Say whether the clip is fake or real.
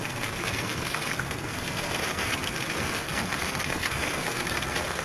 fake